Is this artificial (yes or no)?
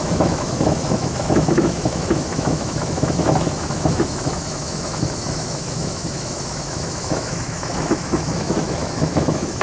yes